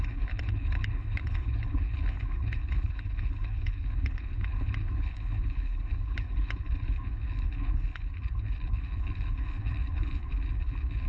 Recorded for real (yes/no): no